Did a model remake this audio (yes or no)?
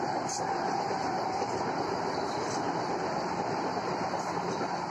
no